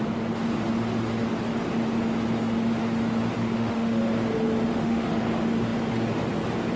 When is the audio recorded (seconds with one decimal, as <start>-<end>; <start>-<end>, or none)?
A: 0.0-3.4; 4.0-4.7; 5.2-6.8

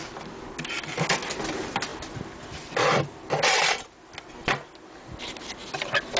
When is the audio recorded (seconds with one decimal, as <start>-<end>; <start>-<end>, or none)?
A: 0.0-6.2

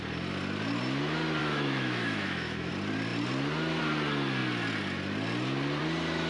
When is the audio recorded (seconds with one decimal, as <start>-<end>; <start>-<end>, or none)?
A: 0.0-1.4; 2.7-6.3